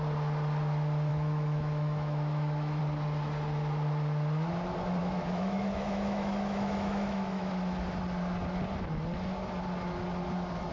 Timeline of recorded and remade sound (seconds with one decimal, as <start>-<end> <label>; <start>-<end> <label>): 0.0-1.1 recorded; 1.1-2.8 remade; 2.8-5.0 recorded; 5.0-7.5 remade; 7.5-10.7 recorded